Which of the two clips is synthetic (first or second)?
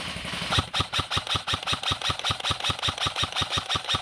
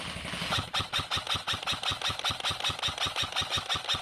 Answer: first